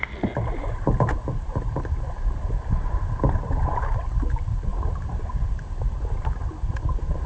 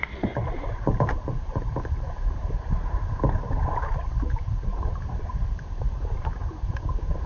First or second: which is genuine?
first